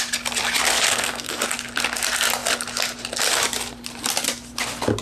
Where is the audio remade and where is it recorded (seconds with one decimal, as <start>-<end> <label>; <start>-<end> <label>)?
0.0-0.9 recorded; 0.9-1.4 remade; 1.4-5.0 recorded